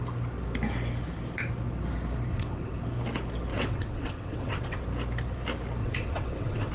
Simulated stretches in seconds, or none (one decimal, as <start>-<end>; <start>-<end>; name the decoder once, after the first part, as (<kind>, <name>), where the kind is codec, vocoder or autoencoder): 2.3-2.8 (vocoder, WaveNeXt); 3.5-4.8; 5.8-6.7